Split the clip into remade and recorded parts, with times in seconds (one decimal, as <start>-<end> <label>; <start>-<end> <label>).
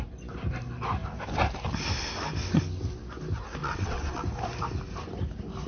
0.0-3.6 recorded; 3.6-4.2 remade; 4.2-5.7 recorded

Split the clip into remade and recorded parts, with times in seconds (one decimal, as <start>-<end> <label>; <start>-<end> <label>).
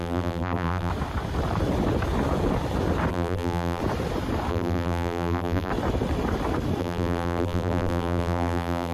0.0-0.9 remade; 0.9-3.1 recorded; 3.1-3.8 remade; 3.8-4.5 recorded; 4.5-5.7 remade; 5.7-6.8 recorded; 6.8-8.9 remade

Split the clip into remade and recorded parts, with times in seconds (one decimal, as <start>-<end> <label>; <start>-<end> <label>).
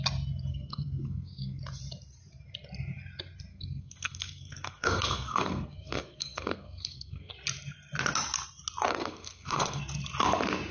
0.0-0.5 recorded; 0.5-1.6 remade; 1.6-3.5 recorded; 3.5-7.3 remade; 7.3-8.9 recorded; 8.9-9.8 remade; 9.8-10.7 recorded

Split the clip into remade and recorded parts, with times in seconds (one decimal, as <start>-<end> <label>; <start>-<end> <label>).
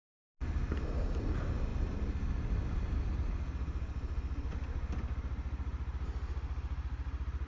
0.0-7.5 recorded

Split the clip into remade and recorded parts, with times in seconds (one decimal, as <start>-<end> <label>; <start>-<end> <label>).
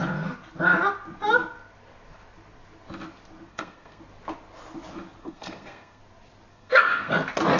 0.0-3.5 recorded; 3.5-4.0 remade; 4.0-5.2 recorded; 5.2-6.0 remade; 6.0-6.5 recorded; 6.5-7.1 remade; 7.1-7.6 recorded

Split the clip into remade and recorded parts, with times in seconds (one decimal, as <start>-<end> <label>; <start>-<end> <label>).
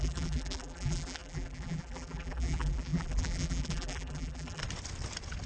0.0-4.6 remade; 4.6-5.5 recorded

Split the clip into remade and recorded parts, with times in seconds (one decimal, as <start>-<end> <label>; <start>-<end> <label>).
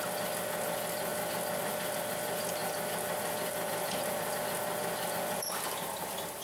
0.0-2.6 recorded; 2.6-4.4 remade; 4.4-6.4 recorded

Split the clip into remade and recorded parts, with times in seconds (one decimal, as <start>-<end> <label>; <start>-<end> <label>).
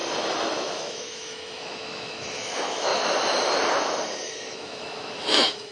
0.0-0.6 recorded; 0.6-2.9 remade; 2.9-4.3 recorded; 4.3-5.7 remade